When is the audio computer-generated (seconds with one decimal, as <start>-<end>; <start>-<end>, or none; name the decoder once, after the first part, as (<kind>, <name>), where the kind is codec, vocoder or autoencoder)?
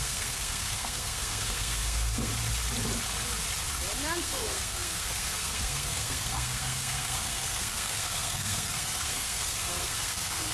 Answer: 0.0-2.3 (codec, SNAC); 4.2-10.5